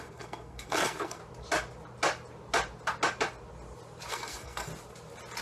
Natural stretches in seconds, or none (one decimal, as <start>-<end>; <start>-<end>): 1.2-4.1; 4.7-5.4